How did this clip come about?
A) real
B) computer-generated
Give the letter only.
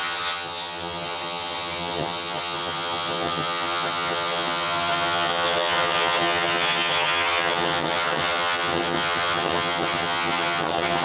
B